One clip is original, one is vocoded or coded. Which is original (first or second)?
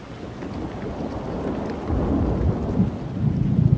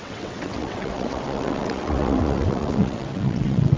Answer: first